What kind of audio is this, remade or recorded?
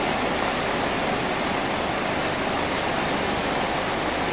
recorded